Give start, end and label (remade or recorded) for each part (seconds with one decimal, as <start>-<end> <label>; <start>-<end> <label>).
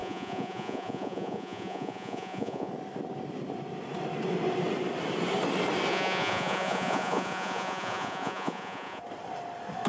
0.0-2.7 remade; 2.7-5.9 recorded; 5.9-9.0 remade; 9.0-9.9 recorded